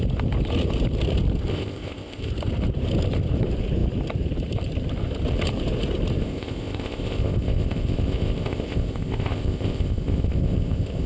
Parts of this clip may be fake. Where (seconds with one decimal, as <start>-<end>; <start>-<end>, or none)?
1.5-2.3; 6.2-11.1